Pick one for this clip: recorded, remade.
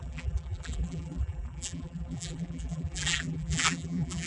remade